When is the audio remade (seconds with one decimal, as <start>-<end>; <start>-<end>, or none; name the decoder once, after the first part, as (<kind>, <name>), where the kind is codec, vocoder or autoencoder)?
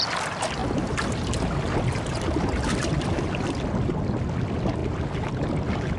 none